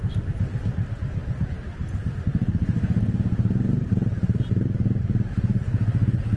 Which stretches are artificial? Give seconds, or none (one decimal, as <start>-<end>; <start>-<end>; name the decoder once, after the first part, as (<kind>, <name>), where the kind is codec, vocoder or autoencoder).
0.0-6.4 (vocoder, BigVGAN v2)